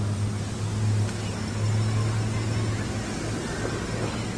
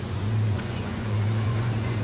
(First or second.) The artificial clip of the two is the second